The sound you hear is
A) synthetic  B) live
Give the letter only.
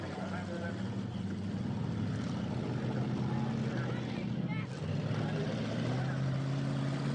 B